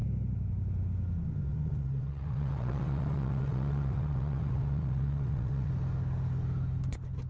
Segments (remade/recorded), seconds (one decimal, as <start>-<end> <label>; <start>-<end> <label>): 0.0-1.5 recorded; 1.5-5.7 remade; 5.7-7.3 recorded